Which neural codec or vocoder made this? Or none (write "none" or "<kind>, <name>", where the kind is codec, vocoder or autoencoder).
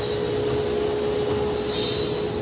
none